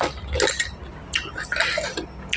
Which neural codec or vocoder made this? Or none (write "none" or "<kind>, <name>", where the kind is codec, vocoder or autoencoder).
vocoder, BigVGAN v2